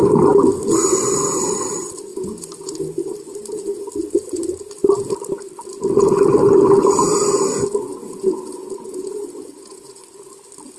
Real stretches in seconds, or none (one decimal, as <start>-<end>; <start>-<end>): 0.0-2.1; 2.7-7.9; 10.0-10.8